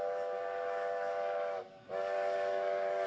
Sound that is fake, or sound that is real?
fake